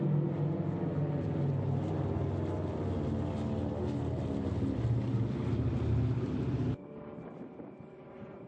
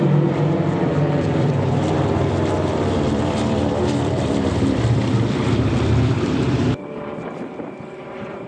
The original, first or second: first